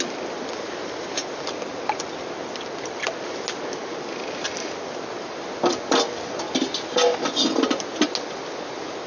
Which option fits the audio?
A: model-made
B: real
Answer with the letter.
B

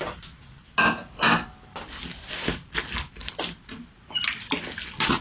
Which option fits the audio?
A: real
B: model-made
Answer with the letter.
A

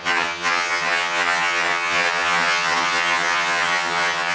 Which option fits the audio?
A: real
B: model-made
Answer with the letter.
B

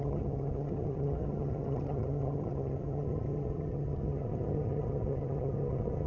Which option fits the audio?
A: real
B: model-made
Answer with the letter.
B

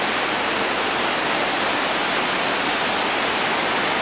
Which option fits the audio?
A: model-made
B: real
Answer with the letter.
B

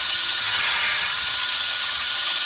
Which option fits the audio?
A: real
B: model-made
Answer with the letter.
B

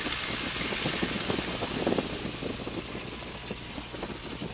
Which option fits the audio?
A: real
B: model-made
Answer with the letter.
A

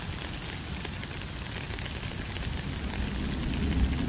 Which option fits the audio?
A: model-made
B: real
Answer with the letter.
B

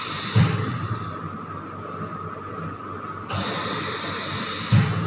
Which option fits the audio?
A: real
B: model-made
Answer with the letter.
A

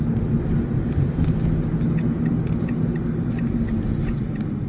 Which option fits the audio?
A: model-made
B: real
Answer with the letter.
B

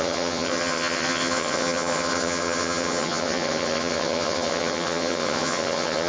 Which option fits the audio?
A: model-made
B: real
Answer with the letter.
A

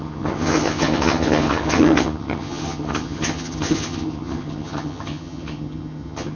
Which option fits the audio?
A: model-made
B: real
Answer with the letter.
A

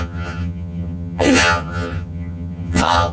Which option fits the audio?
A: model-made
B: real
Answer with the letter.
A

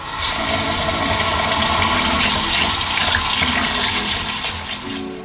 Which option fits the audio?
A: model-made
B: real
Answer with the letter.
B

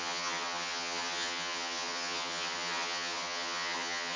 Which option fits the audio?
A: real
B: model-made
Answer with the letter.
B